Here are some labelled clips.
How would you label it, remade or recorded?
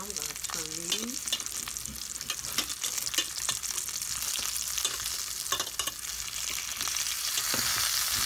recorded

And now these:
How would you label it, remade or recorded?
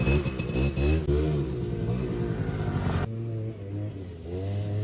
recorded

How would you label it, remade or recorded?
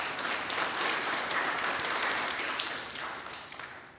remade